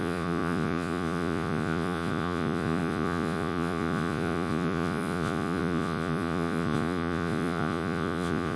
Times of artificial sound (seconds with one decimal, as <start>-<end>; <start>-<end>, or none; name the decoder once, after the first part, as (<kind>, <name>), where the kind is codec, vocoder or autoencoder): 0.0-8.6 (vocoder, Vocos)